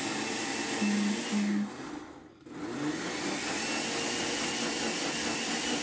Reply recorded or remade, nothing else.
recorded